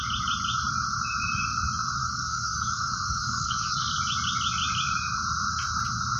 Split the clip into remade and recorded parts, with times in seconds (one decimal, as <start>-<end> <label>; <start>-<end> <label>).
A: 0.0-2.0 recorded; 2.0-3.9 remade; 3.9-6.2 recorded